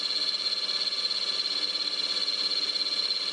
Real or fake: real